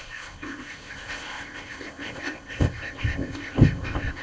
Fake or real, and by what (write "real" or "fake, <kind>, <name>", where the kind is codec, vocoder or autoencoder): fake, codec, ZipCodec